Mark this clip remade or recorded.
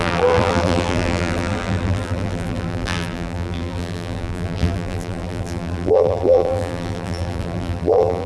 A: remade